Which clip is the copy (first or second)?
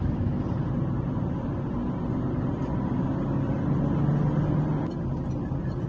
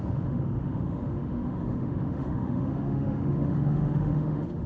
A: second